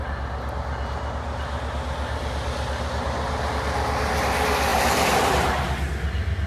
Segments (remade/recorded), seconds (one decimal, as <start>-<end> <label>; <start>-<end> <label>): 0.0-4.7 recorded; 4.7-5.5 remade; 5.5-6.5 recorded